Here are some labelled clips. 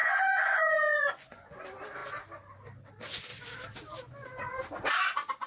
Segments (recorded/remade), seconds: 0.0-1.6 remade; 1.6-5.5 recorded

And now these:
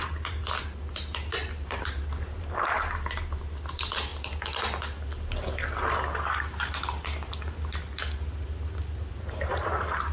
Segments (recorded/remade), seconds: 0.0-0.4 remade; 0.4-1.8 recorded; 1.8-4.1 remade; 4.1-9.1 recorded; 9.1-10.1 remade

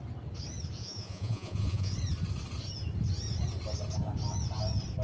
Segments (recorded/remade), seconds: 0.0-0.8 recorded; 0.8-1.9 remade; 1.9-5.0 recorded

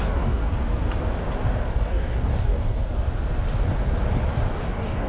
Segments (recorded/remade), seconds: 0.0-0.4 remade; 0.4-1.7 recorded; 1.7-2.8 remade; 2.8-4.5 recorded; 4.5-5.1 remade

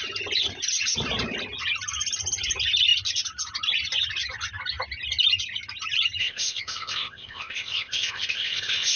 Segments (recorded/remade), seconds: 0.0-6.2 recorded; 6.2-9.0 remade

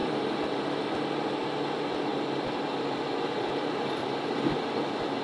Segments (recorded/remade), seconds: 0.0-5.2 remade